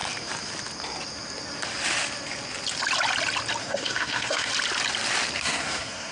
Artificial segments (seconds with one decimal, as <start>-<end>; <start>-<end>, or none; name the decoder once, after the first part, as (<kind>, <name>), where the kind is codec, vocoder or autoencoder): 3.6-4.5 (codec, SNAC); 5.4-6.1